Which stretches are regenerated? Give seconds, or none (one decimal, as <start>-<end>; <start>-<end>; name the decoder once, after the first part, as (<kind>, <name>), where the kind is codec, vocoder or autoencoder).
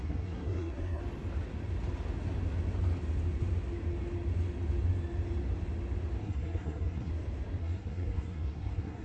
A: 0.0-1.0 (codec, SNAC); 6.2-7.1; 7.6-9.0